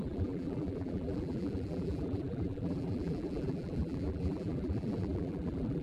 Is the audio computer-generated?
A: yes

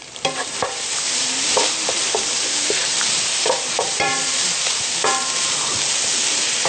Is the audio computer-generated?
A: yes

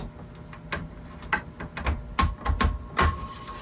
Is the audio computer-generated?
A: no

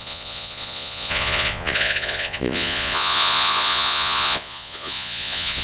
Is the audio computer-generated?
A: yes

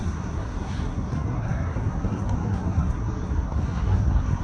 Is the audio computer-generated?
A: yes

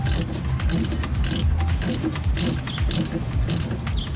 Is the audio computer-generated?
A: no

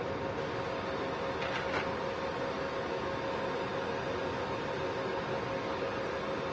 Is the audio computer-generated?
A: no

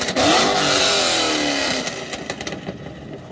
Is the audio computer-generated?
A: no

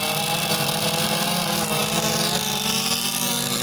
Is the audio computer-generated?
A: no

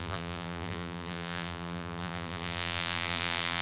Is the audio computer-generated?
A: yes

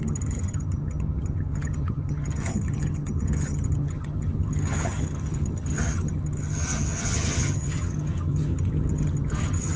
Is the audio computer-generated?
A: yes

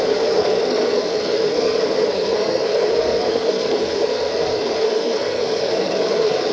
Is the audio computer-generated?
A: yes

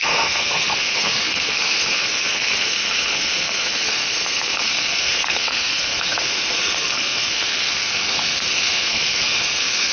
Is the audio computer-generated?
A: yes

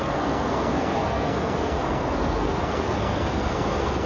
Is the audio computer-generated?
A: yes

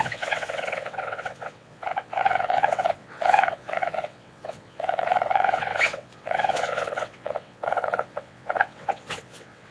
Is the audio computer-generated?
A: yes